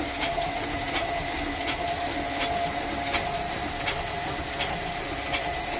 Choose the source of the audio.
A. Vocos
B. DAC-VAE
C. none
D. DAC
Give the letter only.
C